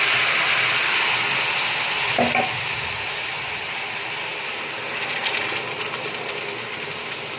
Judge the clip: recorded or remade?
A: recorded